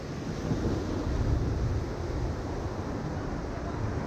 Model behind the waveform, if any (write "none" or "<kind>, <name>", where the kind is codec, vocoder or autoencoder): none